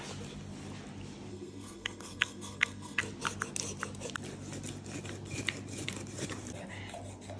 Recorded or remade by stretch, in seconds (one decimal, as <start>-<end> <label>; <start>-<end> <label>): 0.0-1.3 recorded; 1.3-3.0 remade; 3.0-7.4 recorded